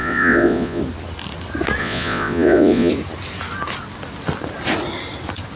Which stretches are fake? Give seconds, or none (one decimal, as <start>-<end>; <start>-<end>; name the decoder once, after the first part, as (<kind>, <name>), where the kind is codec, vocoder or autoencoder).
0.0-0.8 (vocoder, Vocos); 1.8-2.9